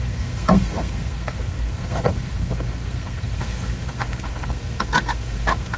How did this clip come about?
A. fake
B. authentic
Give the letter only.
A